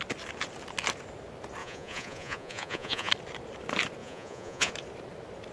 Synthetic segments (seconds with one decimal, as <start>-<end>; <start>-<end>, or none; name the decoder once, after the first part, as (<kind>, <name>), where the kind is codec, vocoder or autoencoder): 1.6-3.1 (vocoder, Vocos); 4.0-4.7